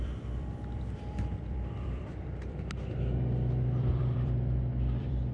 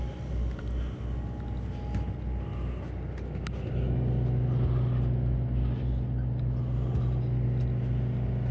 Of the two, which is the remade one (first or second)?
first